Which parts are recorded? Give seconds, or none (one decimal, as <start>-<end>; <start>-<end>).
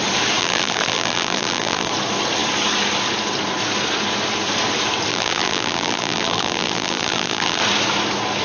0.0-0.4; 1.9-5.1; 7.6-8.4